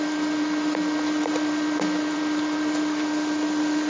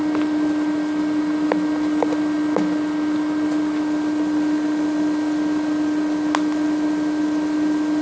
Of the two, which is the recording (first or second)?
second